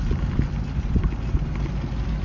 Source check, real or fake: real